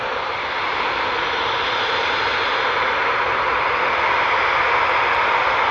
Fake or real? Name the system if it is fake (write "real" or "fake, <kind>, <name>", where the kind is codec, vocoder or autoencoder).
real